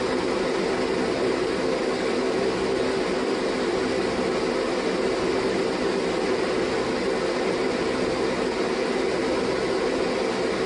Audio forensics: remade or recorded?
recorded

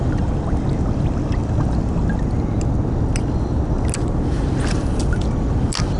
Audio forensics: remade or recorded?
recorded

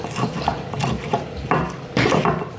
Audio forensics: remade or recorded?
recorded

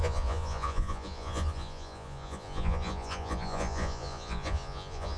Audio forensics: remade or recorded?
remade